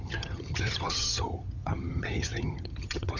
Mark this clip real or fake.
fake